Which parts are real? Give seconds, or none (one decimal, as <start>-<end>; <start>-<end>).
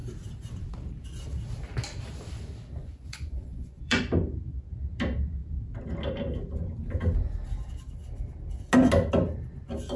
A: 0.0-2.8; 4.0-10.0